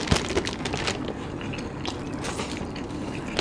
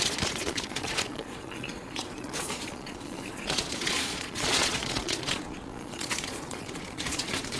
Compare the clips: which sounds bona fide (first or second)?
first